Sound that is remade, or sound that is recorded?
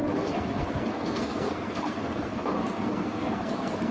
remade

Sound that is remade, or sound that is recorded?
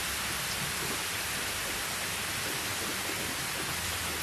recorded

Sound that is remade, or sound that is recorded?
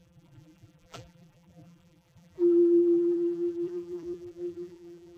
remade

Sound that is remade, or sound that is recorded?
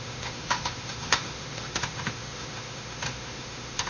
remade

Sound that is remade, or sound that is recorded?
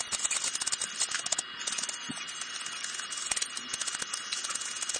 recorded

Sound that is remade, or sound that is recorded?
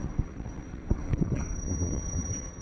remade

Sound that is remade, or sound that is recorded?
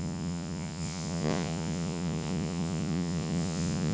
remade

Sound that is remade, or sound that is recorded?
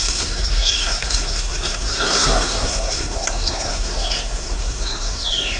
remade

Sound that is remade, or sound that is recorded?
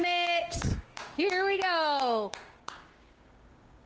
remade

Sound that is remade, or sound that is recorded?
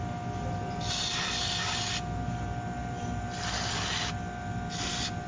recorded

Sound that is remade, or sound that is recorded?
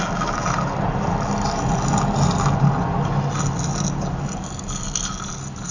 recorded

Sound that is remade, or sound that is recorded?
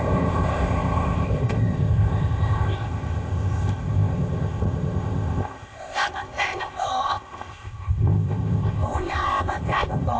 remade